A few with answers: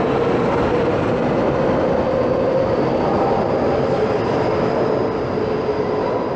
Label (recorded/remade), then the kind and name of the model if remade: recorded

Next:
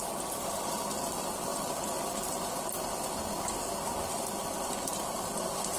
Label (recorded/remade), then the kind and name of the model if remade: recorded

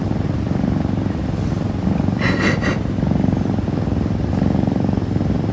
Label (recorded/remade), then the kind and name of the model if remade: remade, vocoder, BigVGAN v2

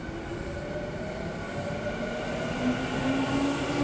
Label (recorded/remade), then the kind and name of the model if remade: recorded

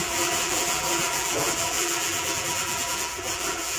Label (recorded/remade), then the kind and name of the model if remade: remade, vocoder, BigVGAN v2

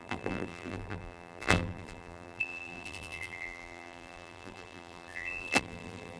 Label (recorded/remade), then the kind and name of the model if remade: remade, vocoder, BigVGAN v2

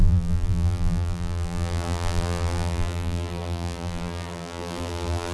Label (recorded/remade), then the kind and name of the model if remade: remade, vocoder, BigVGAN v2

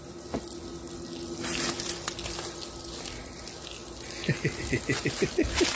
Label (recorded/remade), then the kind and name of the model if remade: recorded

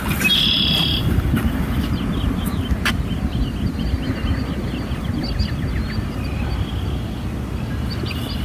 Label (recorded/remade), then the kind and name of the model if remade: recorded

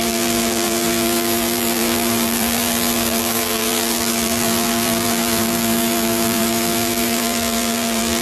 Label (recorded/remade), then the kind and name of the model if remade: remade, vocoder, BigVGAN v2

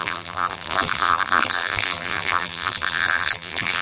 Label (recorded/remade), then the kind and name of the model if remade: remade, vocoder, BigVGAN v2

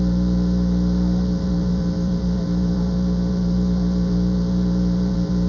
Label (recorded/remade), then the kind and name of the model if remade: remade, vocoder, BigVGAN v2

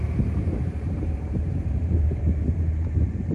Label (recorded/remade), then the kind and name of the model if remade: remade, vocoder, BigVGAN v2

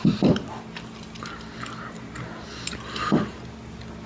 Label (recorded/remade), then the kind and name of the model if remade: recorded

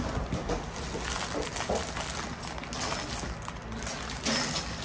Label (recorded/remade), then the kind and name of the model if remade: recorded